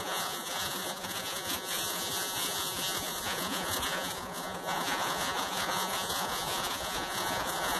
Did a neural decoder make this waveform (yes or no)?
yes